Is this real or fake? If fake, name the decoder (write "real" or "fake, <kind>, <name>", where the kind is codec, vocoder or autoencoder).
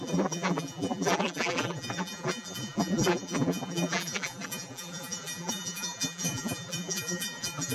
fake, vocoder, BigVGAN v2